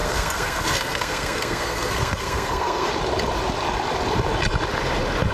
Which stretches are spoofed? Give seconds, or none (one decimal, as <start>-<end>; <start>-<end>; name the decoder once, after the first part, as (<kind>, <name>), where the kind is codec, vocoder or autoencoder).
0.0-2.9 (codec, SNAC)